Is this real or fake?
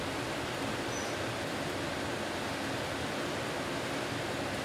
real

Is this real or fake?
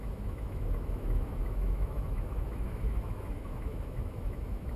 fake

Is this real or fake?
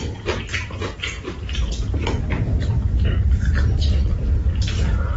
real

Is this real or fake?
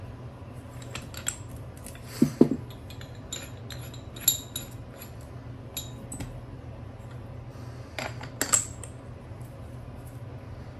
real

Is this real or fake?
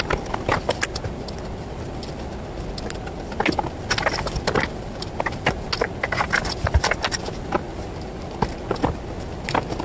real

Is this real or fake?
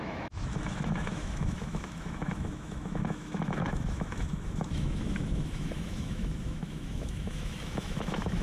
fake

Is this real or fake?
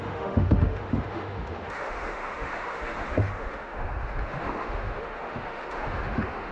fake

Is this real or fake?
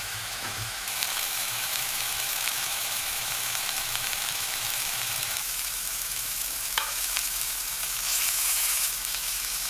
fake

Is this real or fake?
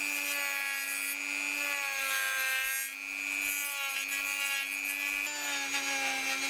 real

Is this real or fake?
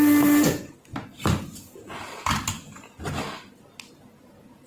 real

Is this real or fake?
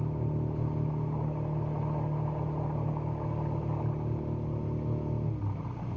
real